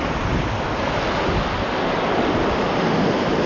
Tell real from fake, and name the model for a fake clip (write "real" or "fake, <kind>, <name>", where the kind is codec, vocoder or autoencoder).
real